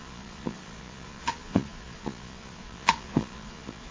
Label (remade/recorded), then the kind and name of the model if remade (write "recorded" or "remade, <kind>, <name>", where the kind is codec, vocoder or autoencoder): remade, vocoder, Vocos